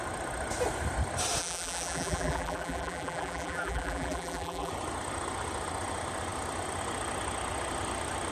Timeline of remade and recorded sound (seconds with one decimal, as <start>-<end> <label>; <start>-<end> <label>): 0.0-1.4 recorded; 1.4-4.7 remade; 4.7-8.3 recorded